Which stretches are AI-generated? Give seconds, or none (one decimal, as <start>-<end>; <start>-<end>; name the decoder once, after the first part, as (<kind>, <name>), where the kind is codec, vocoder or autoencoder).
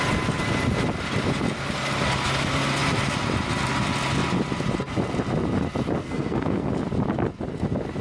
6.0-6.7 (codec, SNAC)